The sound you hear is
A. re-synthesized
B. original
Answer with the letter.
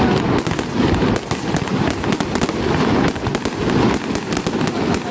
B